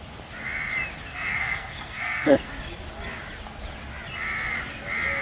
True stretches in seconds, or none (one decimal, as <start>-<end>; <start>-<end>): 0.0-1.1; 2.5-5.2